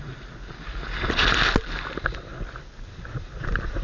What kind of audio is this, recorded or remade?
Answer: recorded